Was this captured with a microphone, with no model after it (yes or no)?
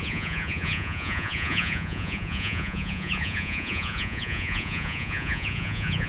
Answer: no